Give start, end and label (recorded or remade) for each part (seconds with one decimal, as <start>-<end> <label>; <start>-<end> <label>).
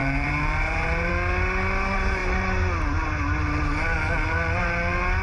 0.0-1.1 remade; 1.1-5.2 recorded